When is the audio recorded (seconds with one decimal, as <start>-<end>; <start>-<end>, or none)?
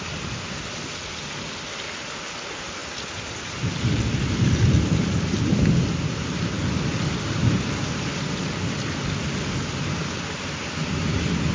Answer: 0.0-11.5